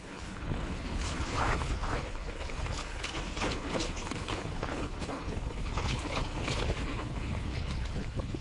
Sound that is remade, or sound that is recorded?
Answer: remade